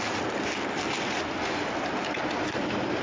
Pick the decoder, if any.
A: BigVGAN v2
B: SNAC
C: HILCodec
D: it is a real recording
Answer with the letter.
D